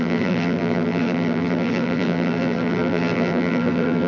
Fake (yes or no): yes